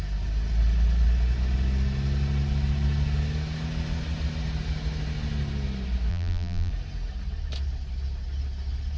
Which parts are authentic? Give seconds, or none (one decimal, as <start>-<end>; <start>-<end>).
0.0-6.1; 6.7-9.0